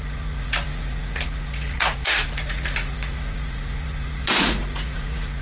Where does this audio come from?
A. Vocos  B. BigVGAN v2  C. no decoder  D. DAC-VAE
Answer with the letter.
A